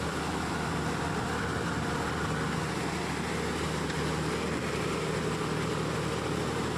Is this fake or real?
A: real